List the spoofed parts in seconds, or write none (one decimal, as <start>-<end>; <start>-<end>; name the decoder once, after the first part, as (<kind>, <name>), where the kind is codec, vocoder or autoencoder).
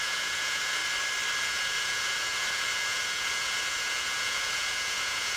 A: 0.0-0.8 (vocoder, Vocos); 1.4-5.4